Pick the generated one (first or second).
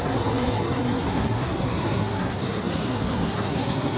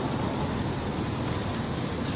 first